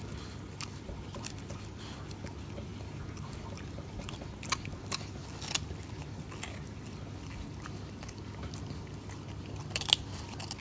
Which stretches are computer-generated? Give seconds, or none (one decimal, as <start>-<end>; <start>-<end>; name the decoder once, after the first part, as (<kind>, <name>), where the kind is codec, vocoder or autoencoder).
none